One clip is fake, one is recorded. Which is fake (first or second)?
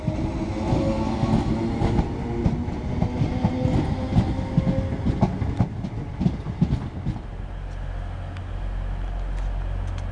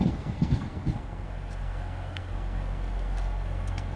second